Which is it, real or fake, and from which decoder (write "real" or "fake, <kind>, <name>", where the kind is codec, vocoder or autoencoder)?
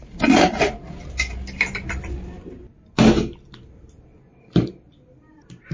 real